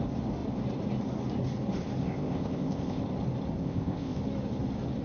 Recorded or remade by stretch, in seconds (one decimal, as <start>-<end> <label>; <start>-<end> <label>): 0.0-2.0 recorded; 2.0-3.0 remade; 3.0-3.6 recorded; 3.6-4.2 remade; 4.2-5.0 recorded